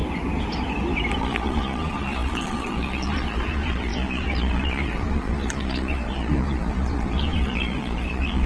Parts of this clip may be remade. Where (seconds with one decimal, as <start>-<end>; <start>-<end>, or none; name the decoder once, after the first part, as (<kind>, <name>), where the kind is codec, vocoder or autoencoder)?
1.2-8.5 (vocoder, Vocos)